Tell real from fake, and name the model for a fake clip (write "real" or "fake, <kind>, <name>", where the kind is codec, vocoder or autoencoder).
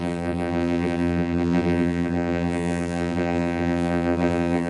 fake, vocoder, BigVGAN v2